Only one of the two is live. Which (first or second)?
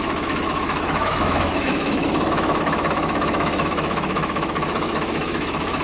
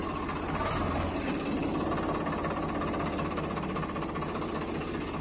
second